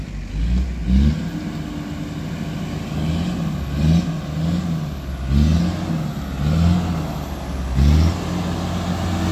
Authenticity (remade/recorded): recorded